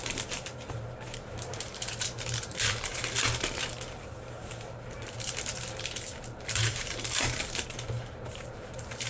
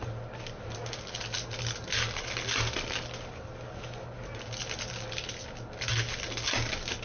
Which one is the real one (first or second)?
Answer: second